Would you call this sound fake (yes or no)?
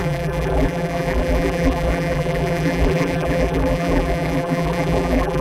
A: yes